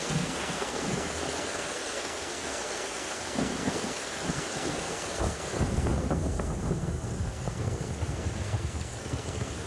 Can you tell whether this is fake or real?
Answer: fake